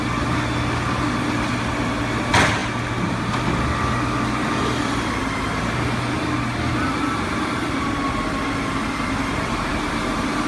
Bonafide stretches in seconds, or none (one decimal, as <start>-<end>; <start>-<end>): 0.0-2.6; 3.3-10.5